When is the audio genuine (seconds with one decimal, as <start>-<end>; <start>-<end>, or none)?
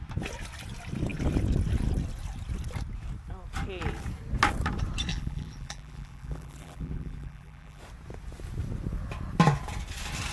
0.0-5.1; 7.8-10.3